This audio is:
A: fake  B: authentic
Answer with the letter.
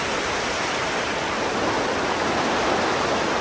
B